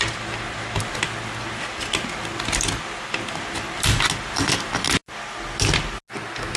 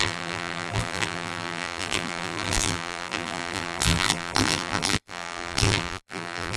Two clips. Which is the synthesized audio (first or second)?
second